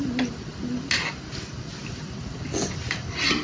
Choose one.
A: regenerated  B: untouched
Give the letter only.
B